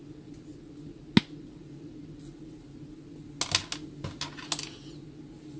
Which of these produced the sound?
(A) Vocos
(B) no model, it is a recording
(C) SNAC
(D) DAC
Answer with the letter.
B